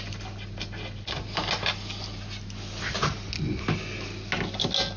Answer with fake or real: real